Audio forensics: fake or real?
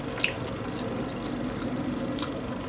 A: real